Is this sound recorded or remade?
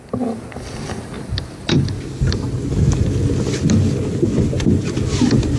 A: recorded